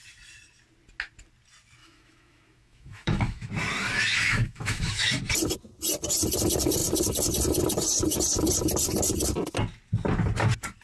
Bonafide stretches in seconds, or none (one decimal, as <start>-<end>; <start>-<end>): 0.0-1.8; 3.5-4.2; 5.2-10.8